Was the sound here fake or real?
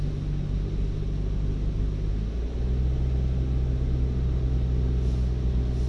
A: real